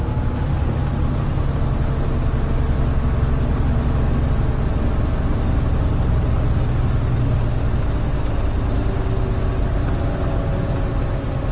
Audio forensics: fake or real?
real